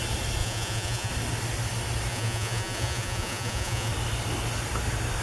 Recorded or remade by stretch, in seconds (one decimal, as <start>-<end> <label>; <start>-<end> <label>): 0.0-0.4 recorded; 0.4-1.1 remade; 1.1-2.1 recorded; 2.1-3.9 remade; 3.9-5.2 recorded